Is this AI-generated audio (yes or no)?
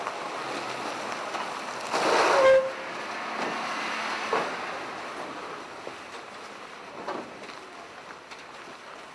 no